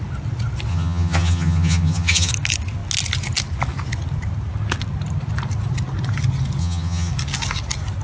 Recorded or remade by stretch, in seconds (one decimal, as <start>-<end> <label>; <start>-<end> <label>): 0.0-0.7 recorded; 0.7-2.3 remade; 2.3-6.6 recorded; 6.6-7.1 remade; 7.1-8.0 recorded